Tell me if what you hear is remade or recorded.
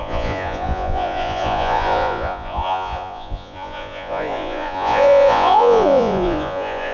remade